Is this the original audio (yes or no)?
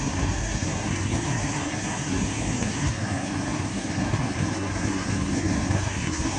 no